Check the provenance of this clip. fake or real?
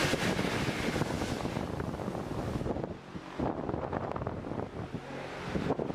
real